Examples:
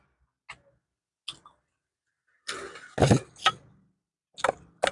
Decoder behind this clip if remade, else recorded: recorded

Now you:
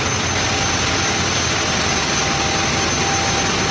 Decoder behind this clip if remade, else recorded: recorded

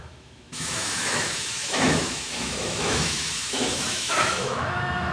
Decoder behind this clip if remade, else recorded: remade, autoencoder, DAC-VAE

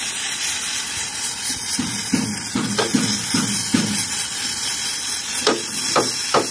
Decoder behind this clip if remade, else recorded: recorded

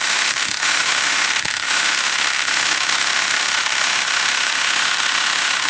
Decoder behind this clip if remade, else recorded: remade, autoencoder, DAC-VAE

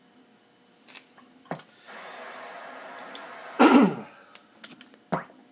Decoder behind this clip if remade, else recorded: recorded